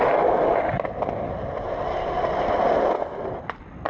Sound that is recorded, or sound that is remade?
recorded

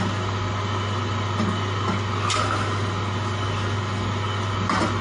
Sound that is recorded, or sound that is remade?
recorded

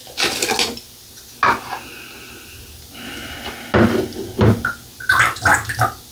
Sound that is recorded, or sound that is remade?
recorded